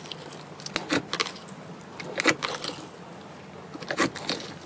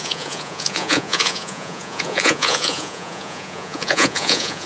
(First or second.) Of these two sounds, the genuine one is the first